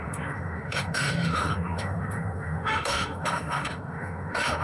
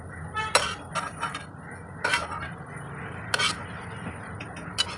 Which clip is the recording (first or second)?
second